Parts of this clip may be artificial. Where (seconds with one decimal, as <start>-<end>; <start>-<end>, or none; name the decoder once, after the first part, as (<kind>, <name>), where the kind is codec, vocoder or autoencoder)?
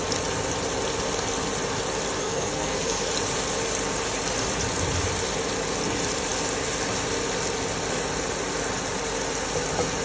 2.2-3.1 (codec, SNAC)